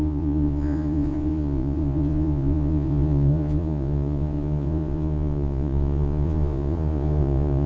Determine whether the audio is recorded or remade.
remade